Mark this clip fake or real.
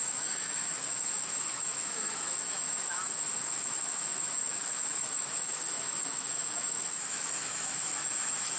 fake